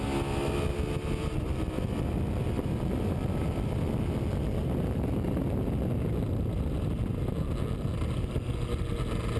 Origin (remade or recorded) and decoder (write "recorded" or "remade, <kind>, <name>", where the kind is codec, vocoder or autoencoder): recorded